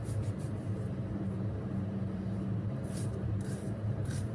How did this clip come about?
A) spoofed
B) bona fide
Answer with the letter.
A